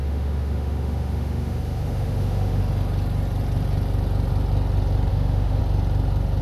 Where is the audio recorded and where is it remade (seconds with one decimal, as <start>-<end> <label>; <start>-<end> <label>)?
0.0-2.6 remade; 2.6-5.1 recorded; 5.1-5.6 remade; 5.6-6.4 recorded